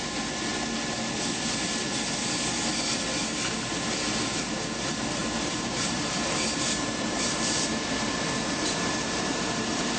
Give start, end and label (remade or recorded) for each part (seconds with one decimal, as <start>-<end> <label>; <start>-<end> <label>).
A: 0.0-5.2 recorded; 5.2-10.0 remade